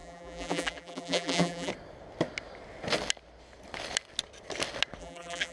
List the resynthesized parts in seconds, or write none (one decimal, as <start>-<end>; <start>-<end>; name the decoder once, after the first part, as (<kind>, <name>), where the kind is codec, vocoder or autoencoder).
0.0-1.7 (vocoder, BigVGAN v2); 5.0-5.5